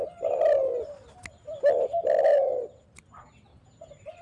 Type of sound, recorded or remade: recorded